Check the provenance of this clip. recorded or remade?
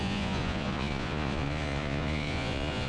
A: remade